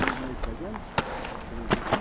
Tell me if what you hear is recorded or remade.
recorded